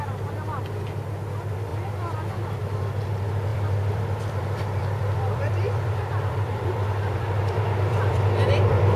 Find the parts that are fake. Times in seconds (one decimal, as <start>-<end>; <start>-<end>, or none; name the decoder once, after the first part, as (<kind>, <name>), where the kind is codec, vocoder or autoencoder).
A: 3.5-9.0 (vocoder, BigVGAN v2)